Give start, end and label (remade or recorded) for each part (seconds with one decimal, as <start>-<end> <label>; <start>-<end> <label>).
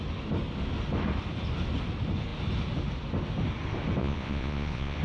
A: 0.0-4.0 recorded; 4.0-5.0 remade